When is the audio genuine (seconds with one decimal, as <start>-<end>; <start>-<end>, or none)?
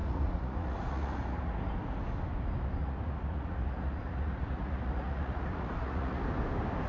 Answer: 1.7-2.8; 6.2-6.9